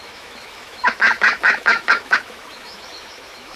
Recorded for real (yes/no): no